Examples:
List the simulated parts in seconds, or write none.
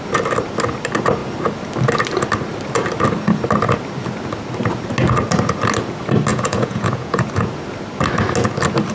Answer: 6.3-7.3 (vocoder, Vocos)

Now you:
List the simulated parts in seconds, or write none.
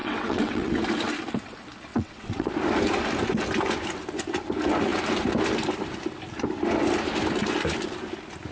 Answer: 0.0-0.7 (vocoder, WaveNeXt); 1.9-2.5